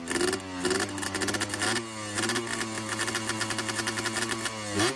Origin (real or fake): real